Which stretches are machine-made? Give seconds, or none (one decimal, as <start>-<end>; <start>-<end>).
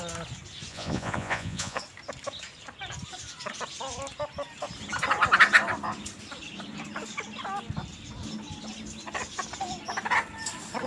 0.7-1.8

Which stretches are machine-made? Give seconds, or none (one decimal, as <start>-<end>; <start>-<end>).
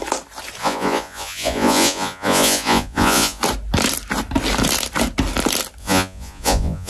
0.6-3.4; 5.8-6.9